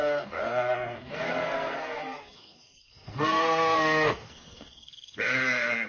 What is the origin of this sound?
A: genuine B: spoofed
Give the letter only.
B